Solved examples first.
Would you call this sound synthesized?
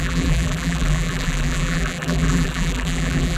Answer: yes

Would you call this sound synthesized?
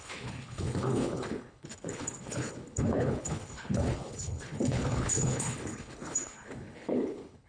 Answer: yes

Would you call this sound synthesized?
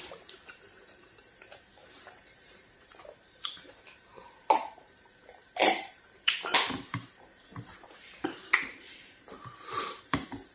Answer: yes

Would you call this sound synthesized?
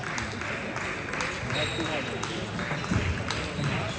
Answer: no